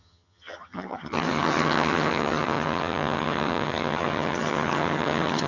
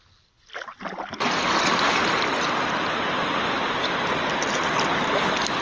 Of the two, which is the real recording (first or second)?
second